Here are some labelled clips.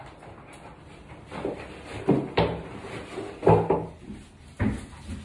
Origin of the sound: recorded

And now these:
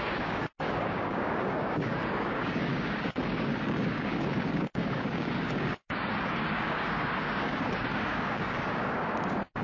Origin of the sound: remade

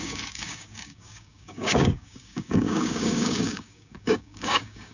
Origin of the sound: remade